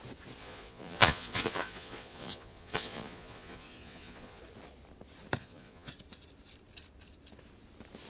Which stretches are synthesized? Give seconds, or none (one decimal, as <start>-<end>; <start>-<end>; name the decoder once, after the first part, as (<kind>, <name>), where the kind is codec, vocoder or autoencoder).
0.4-4.4 (vocoder, Vocos); 5.4-5.9